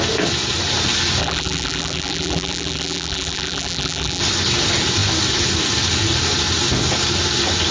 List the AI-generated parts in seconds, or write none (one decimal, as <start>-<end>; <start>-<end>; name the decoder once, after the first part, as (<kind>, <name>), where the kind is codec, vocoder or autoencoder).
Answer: 1.2-4.2 (vocoder, BigVGAN v2)